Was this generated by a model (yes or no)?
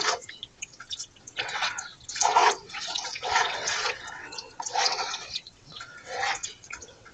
yes